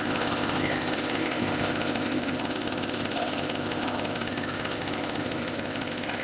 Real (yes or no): no